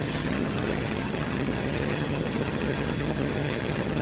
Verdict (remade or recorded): remade